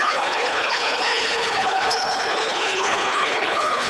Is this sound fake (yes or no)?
yes